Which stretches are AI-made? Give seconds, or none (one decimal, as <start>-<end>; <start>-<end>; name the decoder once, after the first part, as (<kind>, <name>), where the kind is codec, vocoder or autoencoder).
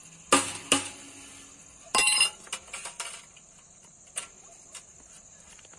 none